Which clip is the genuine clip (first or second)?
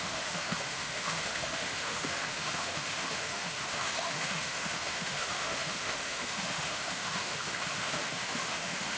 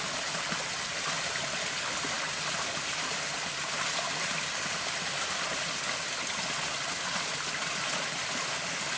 second